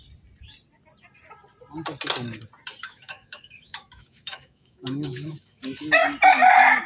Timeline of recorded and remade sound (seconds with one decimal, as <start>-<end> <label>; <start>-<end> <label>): 0.0-2.8 recorded; 2.8-5.6 remade; 5.6-6.9 recorded

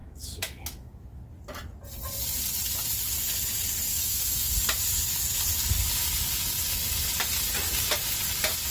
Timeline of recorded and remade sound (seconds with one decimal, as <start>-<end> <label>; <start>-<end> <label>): 0.0-1.4 remade; 1.4-3.9 recorded; 3.9-4.5 remade; 4.5-8.7 recorded

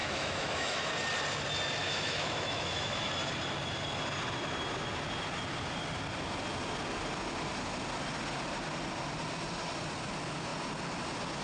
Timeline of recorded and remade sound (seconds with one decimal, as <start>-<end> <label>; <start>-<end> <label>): 0.0-0.9 remade; 0.9-1.8 recorded; 1.8-3.1 remade; 3.1-11.4 recorded